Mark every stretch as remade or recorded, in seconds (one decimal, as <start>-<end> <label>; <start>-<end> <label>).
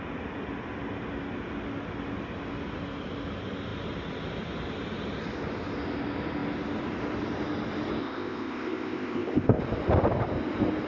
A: 0.0-8.0 recorded; 8.0-9.6 remade; 9.6-10.9 recorded